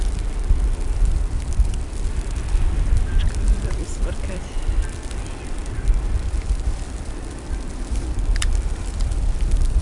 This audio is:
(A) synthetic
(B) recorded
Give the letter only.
A